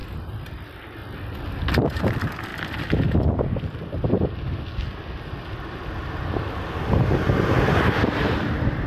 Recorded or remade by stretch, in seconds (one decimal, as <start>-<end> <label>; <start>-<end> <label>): 0.0-0.6 recorded; 0.6-1.0 remade; 1.0-2.0 recorded; 2.0-2.5 remade; 2.5-7.5 recorded; 7.5-8.9 remade